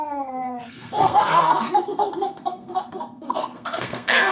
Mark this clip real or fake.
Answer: fake